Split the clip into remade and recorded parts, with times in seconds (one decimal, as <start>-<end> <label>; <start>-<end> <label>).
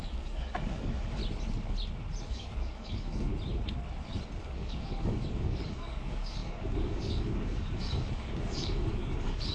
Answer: 0.0-1.2 remade; 1.2-2.3 recorded; 2.3-3.3 remade; 3.3-4.4 recorded; 4.4-9.5 remade